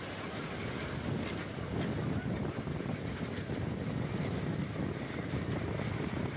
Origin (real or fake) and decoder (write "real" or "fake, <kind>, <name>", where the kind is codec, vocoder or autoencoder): real